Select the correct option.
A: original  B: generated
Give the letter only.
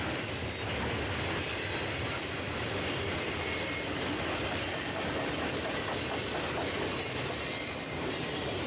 A